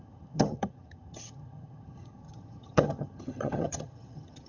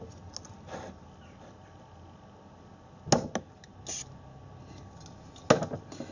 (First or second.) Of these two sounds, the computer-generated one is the first